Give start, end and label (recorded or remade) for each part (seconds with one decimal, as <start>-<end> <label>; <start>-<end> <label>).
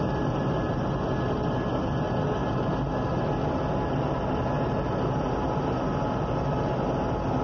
0.0-7.4 recorded